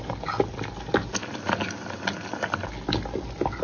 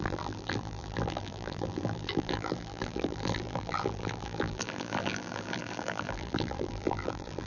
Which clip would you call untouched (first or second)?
first